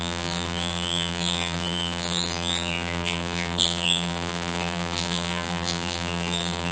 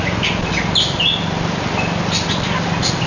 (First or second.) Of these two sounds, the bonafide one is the second